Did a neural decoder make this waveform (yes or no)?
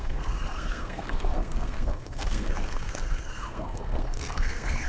yes